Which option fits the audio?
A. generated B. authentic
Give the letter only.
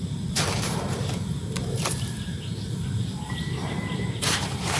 A